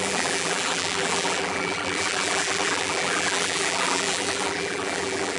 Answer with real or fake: fake